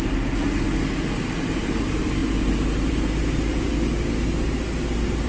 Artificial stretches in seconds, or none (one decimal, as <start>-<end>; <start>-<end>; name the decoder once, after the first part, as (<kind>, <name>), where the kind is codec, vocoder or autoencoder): none